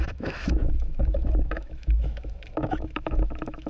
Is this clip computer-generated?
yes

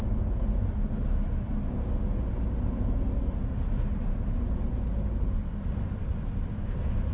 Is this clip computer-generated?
no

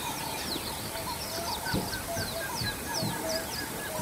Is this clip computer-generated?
yes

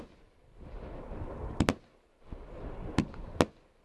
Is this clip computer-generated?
no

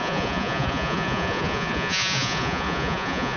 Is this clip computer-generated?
yes